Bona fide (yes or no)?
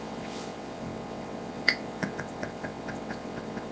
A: no